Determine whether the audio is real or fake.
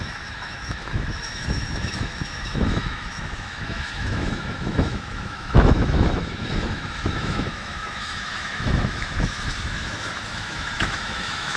fake